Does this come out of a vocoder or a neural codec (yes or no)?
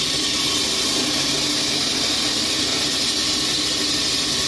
no